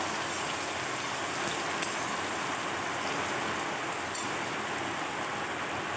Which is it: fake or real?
real